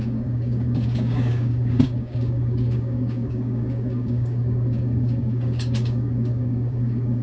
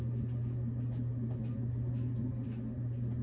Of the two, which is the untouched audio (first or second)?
second